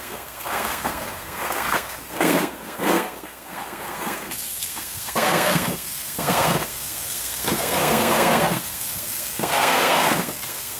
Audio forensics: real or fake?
fake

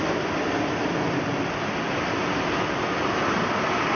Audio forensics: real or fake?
real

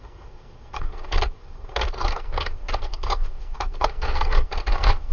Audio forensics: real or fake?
fake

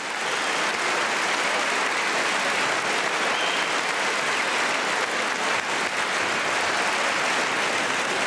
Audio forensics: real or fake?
real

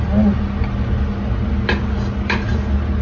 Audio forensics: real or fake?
real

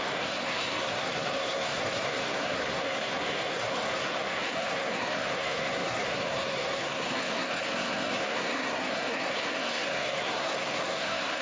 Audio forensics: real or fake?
fake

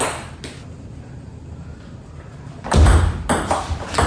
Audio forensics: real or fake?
real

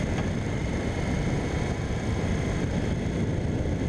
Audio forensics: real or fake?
real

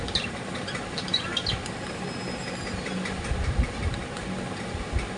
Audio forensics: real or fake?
real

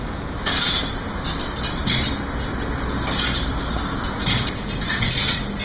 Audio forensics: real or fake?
real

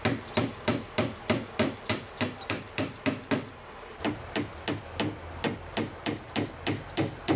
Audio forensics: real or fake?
real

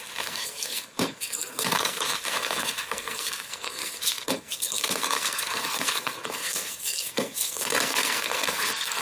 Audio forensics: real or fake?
fake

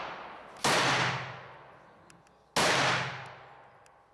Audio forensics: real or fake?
real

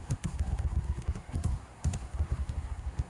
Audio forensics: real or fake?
fake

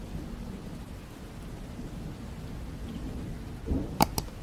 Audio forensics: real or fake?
real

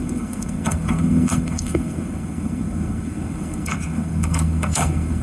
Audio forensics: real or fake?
fake